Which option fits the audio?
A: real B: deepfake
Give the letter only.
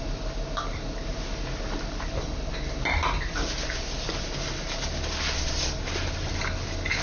A